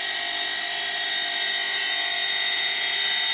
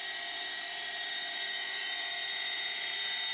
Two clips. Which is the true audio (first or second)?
first